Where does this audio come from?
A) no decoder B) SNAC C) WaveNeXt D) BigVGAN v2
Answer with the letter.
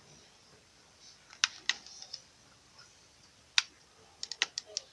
A